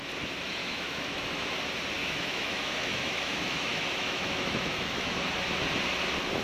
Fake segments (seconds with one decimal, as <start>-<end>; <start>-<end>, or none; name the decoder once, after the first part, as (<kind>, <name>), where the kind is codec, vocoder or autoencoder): 0.6-1.6 (autoencoder, DAC-VAE); 2.0-5.3